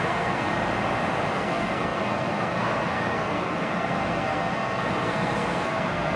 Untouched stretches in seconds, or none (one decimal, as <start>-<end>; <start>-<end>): 0.5-1.3